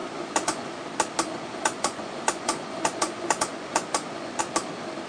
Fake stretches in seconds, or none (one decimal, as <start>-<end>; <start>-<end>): 0.0-0.8; 1.3-4.4